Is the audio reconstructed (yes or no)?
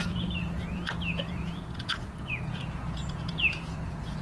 yes